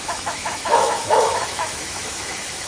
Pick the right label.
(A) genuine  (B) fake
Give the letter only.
B